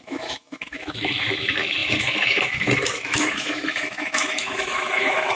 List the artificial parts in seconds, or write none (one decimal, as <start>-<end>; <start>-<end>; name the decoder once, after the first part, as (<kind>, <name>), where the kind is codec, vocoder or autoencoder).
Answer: 0.0-5.3 (autoencoder, DAC-VAE)